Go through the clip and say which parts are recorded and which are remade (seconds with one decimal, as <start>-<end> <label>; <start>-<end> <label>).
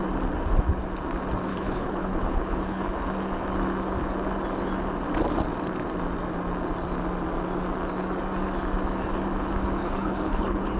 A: 0.0-1.5 recorded; 1.5-2.9 remade; 2.9-9.8 recorded; 9.8-10.8 remade